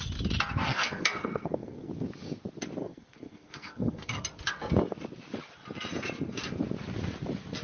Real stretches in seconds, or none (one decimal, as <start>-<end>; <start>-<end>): 0.0-0.7; 1.9-2.8; 4.2-7.6